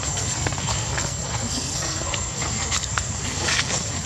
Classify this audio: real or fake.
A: fake